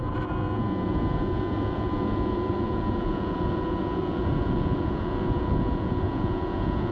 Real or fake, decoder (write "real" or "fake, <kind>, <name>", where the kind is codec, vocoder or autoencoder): fake, vocoder, Vocos